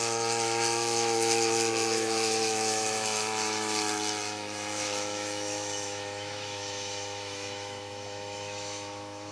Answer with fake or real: fake